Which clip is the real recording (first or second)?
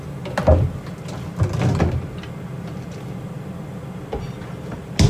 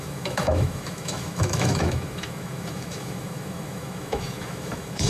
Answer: first